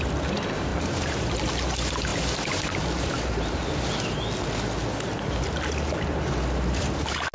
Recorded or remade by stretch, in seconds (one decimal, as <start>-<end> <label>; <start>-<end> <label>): 0.0-0.7 recorded; 0.7-1.4 remade; 1.4-2.1 recorded; 2.1-3.3 remade; 3.3-7.3 recorded